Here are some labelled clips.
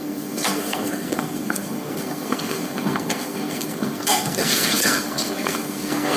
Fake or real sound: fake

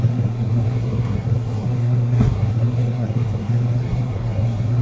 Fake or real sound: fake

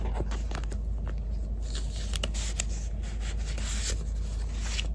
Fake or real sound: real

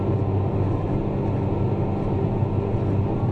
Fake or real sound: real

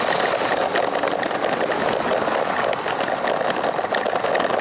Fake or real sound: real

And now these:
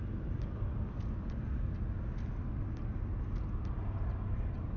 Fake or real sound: real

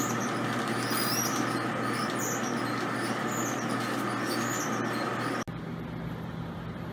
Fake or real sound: real